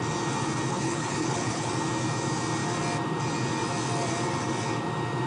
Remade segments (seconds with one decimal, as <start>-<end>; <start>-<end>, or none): 0.7-1.7